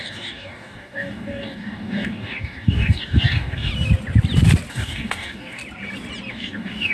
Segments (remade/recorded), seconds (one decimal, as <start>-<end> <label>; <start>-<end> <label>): 0.0-3.7 remade; 3.7-4.7 recorded; 4.7-5.6 remade; 5.6-6.3 recorded; 6.3-6.9 remade